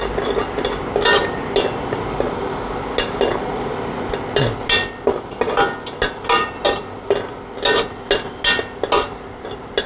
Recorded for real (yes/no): yes